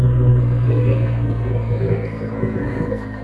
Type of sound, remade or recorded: remade